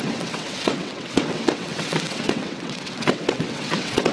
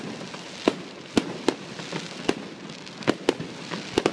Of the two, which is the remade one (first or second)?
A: first